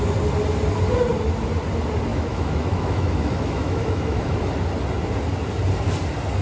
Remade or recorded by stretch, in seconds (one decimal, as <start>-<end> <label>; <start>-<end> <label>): 0.0-2.1 recorded; 2.1-4.5 remade; 4.5-6.4 recorded